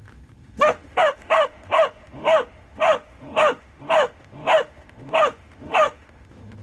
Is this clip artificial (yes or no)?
yes